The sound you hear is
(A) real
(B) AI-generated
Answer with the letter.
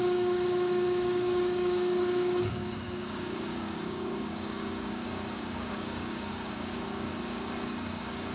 B